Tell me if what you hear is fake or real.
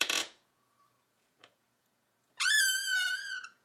fake